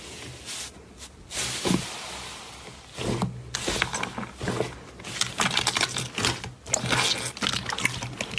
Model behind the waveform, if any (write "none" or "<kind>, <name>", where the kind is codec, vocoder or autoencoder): none